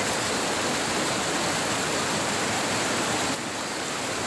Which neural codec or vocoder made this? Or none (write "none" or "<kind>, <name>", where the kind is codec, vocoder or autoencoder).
none